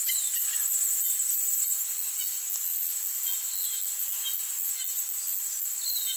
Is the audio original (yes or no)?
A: yes